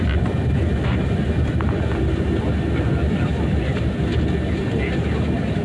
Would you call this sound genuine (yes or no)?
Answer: yes